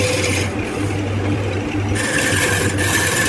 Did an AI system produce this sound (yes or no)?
no